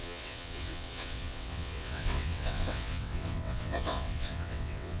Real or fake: fake